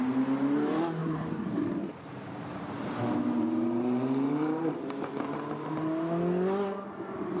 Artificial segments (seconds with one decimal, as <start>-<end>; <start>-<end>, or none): 1.0-5.4